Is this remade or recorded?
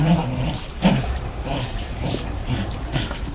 remade